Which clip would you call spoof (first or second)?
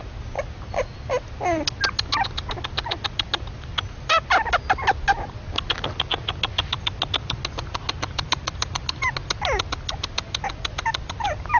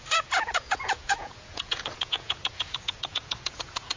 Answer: second